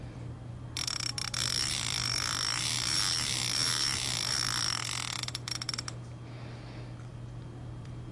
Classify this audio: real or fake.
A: fake